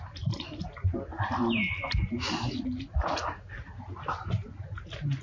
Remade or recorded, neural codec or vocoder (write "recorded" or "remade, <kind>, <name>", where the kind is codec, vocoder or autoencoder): recorded